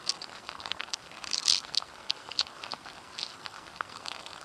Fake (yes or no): yes